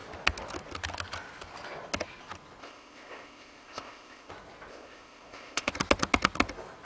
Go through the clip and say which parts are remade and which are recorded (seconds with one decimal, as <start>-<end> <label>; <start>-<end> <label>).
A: 0.0-2.6 recorded; 2.6-4.3 remade; 4.3-4.7 recorded; 4.7-5.7 remade; 5.7-6.8 recorded